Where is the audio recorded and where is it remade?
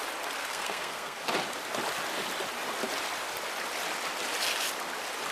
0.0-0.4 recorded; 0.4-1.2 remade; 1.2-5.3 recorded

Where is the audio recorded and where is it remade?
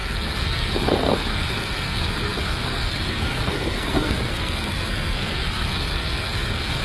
0.0-6.8 remade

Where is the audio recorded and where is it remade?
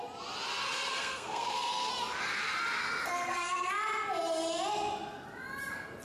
0.0-0.9 recorded; 0.9-1.9 remade; 1.9-2.8 recorded; 2.8-3.7 remade; 3.7-6.0 recorded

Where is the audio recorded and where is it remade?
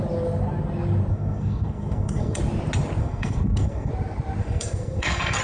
0.0-1.1 recorded; 1.1-2.4 remade; 2.4-3.0 recorded; 3.0-3.9 remade; 3.9-4.4 recorded; 4.4-5.4 remade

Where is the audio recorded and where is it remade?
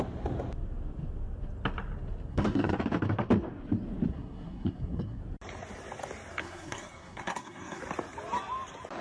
0.0-2.3 recorded; 2.3-2.8 remade; 2.8-4.1 recorded; 4.1-5.2 remade; 5.2-6.4 recorded; 6.4-7.8 remade; 7.8-9.0 recorded